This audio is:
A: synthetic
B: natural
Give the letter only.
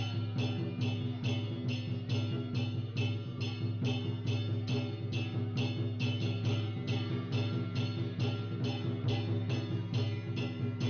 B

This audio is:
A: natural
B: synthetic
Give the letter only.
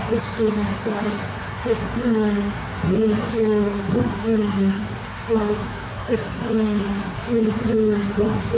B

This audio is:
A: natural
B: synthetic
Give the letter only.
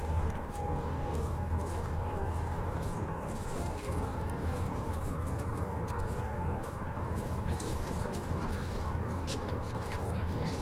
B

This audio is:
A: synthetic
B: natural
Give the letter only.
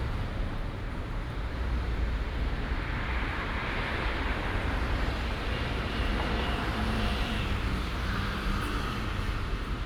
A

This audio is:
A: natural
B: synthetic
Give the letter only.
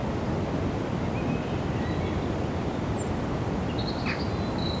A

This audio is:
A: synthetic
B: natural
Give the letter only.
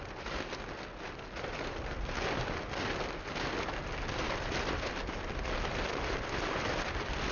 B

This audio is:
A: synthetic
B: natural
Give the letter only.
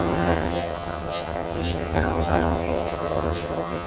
A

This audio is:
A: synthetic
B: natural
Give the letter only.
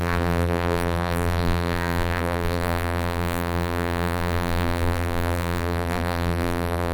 A